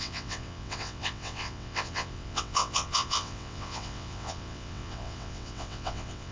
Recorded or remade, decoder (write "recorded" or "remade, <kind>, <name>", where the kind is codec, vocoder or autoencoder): remade, vocoder, WaveNeXt